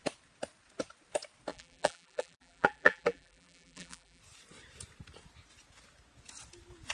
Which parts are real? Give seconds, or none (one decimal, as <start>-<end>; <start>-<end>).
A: 0.0-1.5; 4.2-6.9